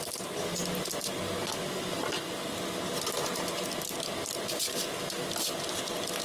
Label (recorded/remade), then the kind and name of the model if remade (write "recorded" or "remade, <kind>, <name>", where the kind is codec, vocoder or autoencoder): recorded